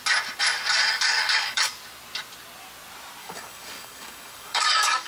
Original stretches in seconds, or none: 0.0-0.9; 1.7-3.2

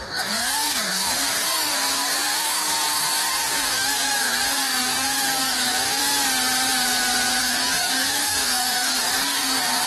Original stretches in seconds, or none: 6.0-7.4

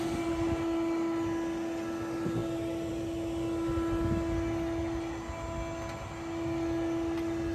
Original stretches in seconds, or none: 0.0-7.5

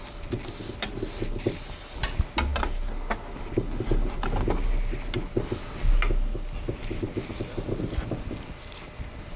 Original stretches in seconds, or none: 0.0-9.4

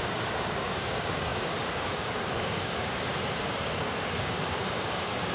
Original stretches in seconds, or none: none